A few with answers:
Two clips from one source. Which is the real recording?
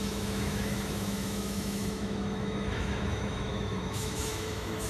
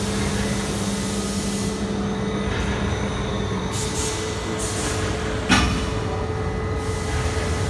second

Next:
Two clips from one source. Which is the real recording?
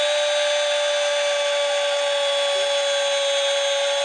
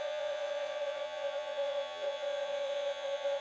first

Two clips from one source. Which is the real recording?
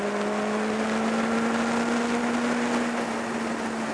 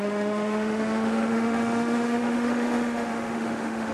first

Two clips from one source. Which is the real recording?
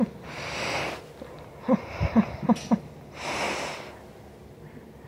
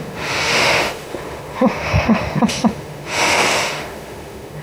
first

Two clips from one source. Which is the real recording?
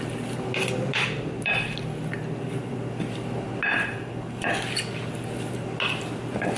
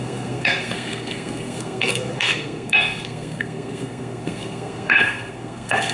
first